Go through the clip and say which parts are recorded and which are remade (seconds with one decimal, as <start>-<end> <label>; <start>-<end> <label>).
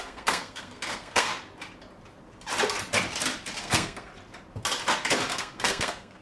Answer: 0.0-1.3 remade; 1.3-3.6 recorded; 3.6-4.1 remade; 4.1-5.3 recorded; 5.3-6.2 remade